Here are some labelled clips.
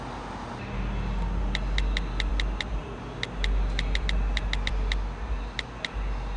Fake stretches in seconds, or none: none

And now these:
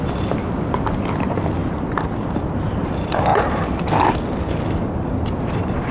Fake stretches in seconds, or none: 1.6-2.4 (vocoder, BigVGAN v2); 3.3-3.9

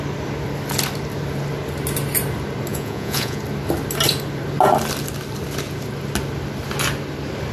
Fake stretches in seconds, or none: 2.7-3.4 (vocoder, Vocos)

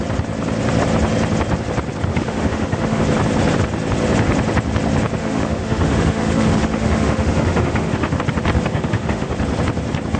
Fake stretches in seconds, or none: 2.1-3.0 (autoencoder, DAC-VAE); 5.2-8.2; 8.7-9.3

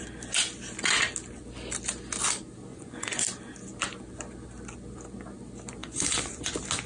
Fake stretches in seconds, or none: 2.7-3.2 (vocoder, Vocos); 5.8-6.5

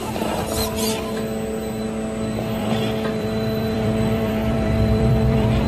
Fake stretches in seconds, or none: 2.6-5.7 (vocoder, BigVGAN v2)

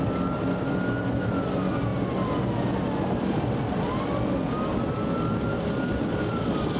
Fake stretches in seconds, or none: none

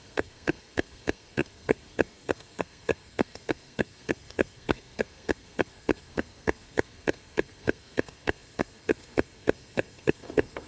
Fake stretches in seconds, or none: 0.0-10.7 (codec, SNAC)